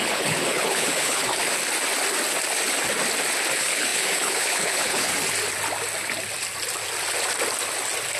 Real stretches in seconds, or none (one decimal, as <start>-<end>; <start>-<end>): 1.2-3.5; 5.1-8.2